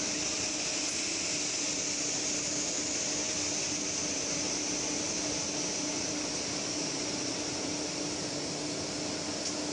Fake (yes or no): no